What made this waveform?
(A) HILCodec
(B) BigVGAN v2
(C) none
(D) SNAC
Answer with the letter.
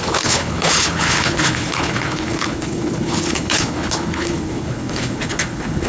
A